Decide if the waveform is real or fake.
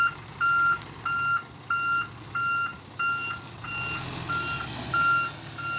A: real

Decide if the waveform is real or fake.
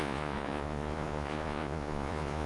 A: fake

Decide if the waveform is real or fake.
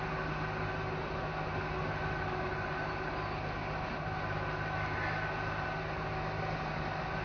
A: real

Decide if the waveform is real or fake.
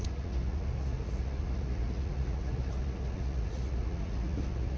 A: fake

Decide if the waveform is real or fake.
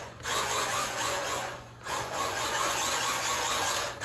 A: fake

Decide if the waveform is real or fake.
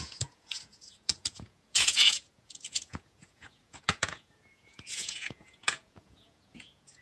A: fake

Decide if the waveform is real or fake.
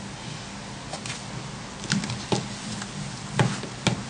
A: real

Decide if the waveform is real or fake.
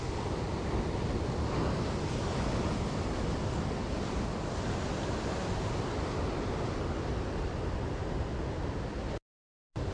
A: real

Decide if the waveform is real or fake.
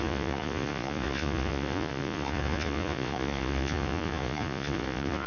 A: fake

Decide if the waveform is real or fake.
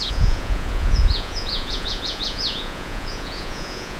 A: fake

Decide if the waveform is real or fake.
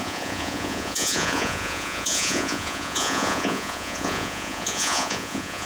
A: fake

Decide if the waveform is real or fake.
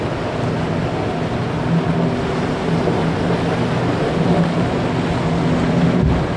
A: real